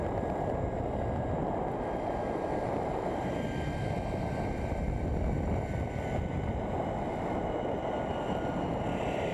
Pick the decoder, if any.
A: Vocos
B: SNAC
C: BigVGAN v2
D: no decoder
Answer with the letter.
D